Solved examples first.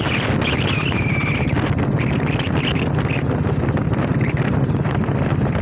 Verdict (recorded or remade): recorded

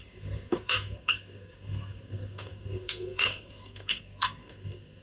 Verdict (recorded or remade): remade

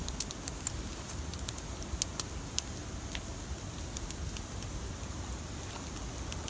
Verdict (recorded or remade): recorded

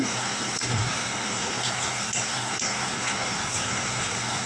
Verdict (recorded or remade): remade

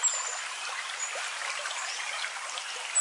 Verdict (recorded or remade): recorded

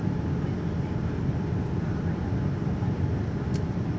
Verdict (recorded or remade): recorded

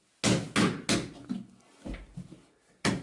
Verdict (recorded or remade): recorded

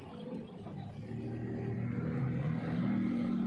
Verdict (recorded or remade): recorded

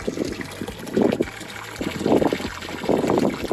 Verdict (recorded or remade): recorded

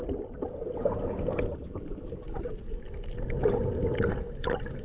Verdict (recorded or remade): recorded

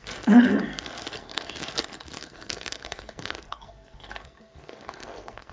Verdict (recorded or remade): remade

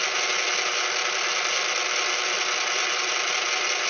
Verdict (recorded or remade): recorded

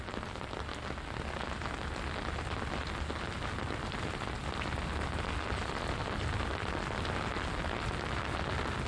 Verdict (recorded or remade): recorded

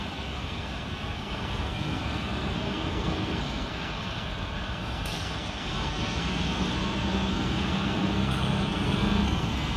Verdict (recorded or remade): remade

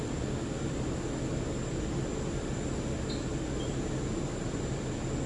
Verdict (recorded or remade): recorded